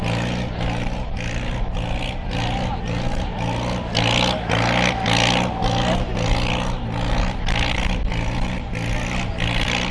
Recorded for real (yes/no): yes